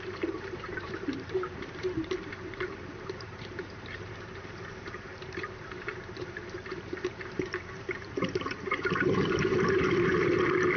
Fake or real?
fake